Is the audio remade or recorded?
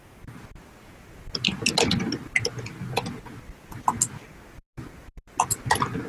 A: recorded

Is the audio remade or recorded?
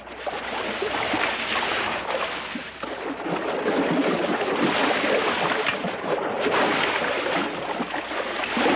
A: recorded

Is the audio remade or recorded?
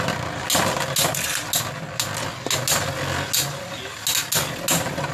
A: recorded